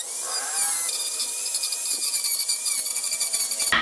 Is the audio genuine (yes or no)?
yes